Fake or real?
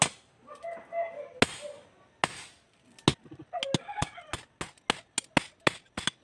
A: real